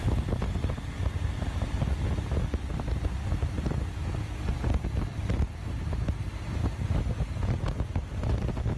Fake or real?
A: real